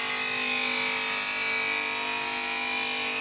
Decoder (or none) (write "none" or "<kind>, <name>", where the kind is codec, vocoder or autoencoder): none